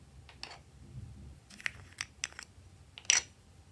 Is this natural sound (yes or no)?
yes